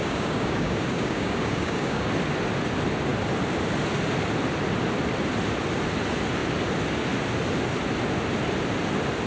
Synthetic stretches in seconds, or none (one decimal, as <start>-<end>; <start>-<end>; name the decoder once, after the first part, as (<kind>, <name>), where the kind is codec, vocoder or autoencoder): 0.0-2.1 (codec, DAC)